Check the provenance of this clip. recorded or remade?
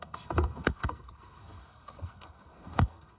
remade